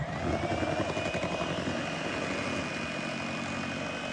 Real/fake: real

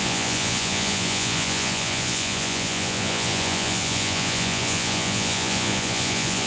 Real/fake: fake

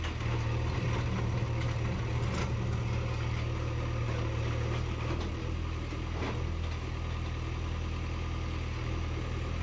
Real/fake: real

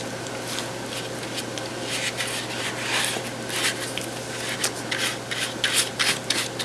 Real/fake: real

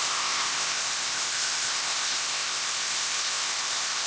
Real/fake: fake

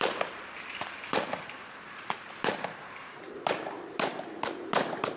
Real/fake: fake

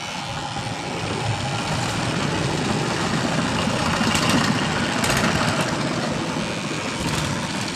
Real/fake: real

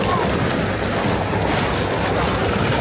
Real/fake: real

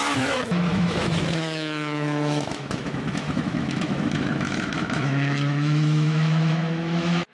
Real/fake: fake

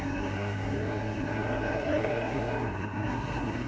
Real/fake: fake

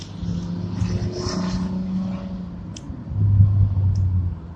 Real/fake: real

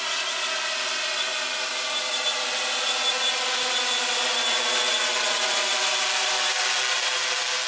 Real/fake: real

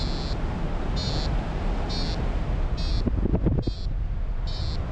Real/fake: real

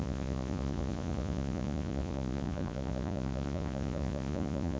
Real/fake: fake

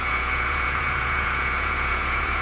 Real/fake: fake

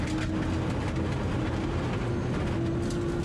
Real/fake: real